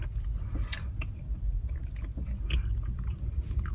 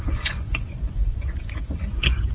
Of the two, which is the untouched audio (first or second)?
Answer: first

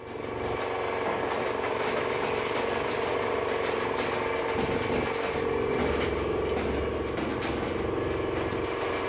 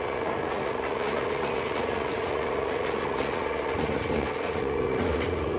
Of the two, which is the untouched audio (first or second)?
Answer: first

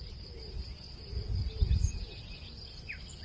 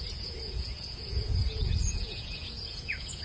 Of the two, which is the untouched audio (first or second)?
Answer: first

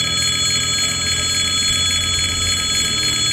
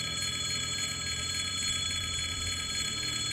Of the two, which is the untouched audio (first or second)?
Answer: first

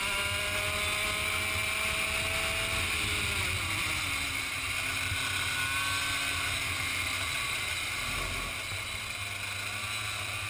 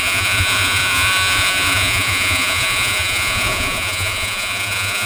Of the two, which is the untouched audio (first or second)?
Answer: first